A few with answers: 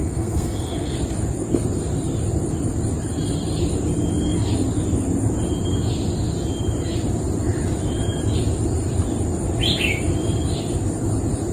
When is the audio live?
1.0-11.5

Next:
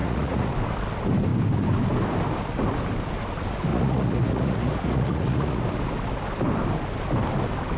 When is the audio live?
0.5-3.7; 5.6-7.8

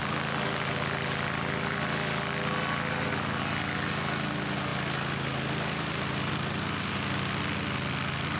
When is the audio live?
0.0-8.4

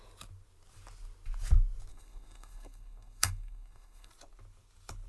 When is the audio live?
0.0-1.9; 4.1-5.1

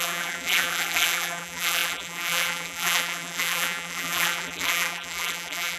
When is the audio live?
none

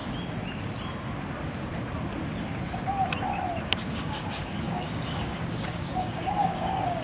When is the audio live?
0.0-3.6

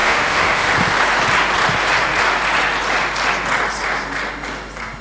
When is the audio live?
0.7-5.0

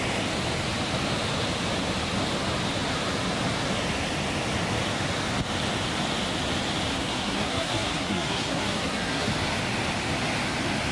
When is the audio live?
0.0-6.9; 9.3-10.9